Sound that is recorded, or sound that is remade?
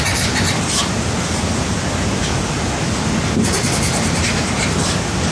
recorded